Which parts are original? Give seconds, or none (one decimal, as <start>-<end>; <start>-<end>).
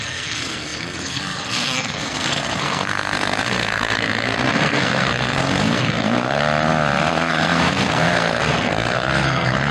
6.4-7.1